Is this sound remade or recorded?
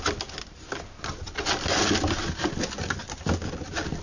recorded